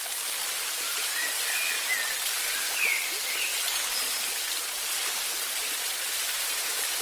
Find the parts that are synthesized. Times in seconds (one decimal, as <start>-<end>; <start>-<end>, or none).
none